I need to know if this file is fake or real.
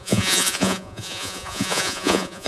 fake